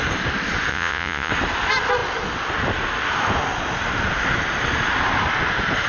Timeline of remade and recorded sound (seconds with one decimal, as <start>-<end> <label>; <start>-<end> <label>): 0.0-0.7 recorded; 0.7-1.3 remade; 1.3-5.9 recorded